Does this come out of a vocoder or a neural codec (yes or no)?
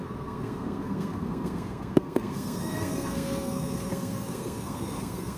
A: yes